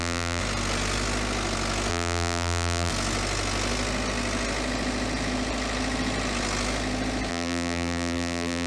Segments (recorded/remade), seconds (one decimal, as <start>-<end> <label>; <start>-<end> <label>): 0.0-0.4 remade; 0.4-1.9 recorded; 1.9-2.9 remade; 2.9-7.3 recorded; 7.3-8.7 remade